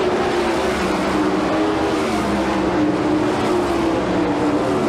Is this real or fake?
real